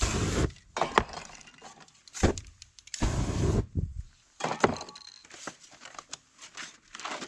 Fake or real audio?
real